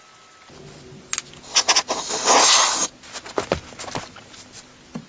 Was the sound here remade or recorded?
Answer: recorded